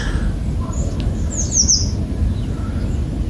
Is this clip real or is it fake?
real